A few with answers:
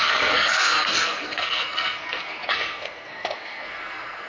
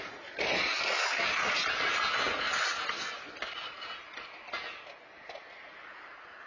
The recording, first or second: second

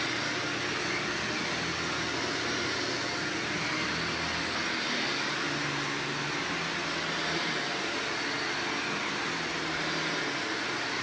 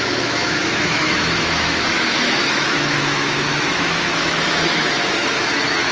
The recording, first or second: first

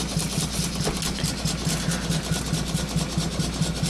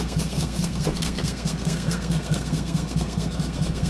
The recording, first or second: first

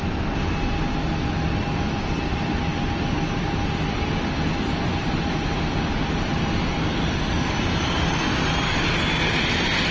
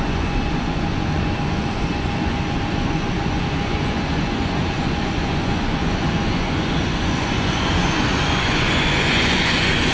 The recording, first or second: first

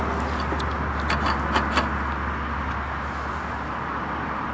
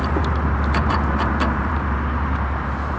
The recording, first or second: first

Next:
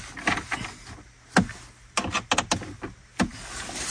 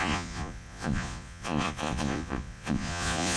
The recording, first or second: first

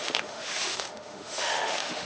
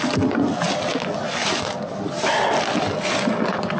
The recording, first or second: second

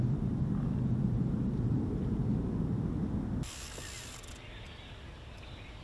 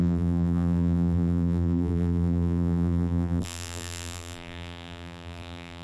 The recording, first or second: first